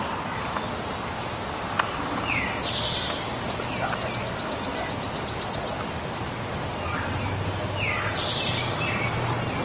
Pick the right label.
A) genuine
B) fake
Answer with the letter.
A